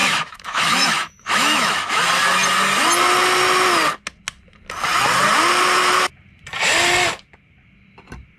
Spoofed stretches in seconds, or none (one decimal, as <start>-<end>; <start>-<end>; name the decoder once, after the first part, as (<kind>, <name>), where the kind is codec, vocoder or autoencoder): 0.0-2.0 (autoencoder, DAC-VAE)